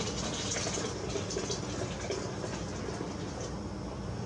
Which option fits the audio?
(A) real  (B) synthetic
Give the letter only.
A